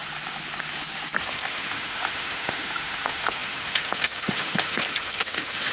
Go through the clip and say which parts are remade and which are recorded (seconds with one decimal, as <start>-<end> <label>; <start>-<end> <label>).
0.0-1.2 recorded; 1.2-5.7 remade